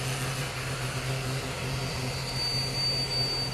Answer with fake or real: real